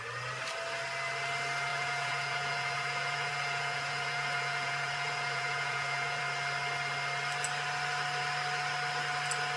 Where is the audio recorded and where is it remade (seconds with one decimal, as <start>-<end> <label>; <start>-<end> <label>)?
0.0-1.7 recorded; 1.7-6.2 remade; 6.2-9.6 recorded